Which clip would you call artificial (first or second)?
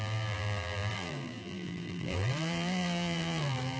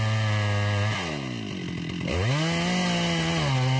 first